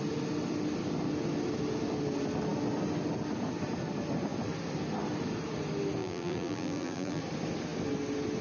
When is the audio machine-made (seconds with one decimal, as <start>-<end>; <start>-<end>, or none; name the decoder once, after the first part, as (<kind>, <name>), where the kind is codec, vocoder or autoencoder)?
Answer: 6.0-7.2 (vocoder, BigVGAN v2)